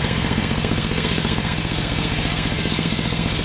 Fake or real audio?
fake